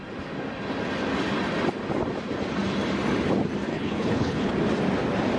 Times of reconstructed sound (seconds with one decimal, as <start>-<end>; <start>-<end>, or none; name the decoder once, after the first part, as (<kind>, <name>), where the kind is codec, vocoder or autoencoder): 3.7-4.5 (codec, HILCodec)